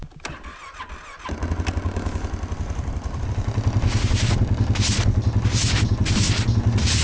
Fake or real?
real